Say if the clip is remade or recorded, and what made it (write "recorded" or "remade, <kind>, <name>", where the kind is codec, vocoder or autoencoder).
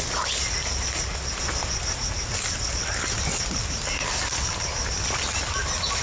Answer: recorded